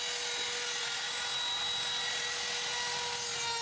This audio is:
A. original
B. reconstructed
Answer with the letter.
A